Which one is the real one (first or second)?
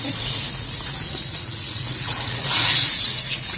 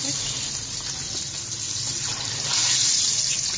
second